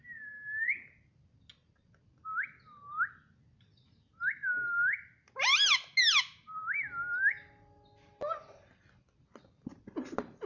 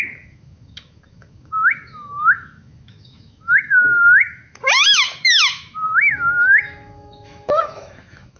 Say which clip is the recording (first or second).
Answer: first